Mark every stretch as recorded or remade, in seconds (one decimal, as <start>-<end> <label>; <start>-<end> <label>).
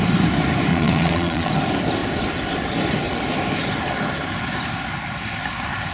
0.0-0.7 recorded; 0.7-1.5 remade; 1.5-5.9 recorded